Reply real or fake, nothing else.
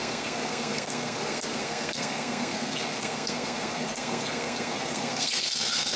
fake